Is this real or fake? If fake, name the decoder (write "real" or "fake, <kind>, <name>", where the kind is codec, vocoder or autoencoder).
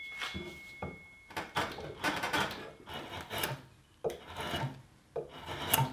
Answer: real